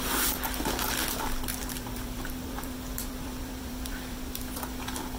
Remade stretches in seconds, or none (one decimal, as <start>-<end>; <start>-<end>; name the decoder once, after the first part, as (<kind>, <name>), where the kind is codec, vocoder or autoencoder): 1.5-4.6 (vocoder, BigVGAN v2)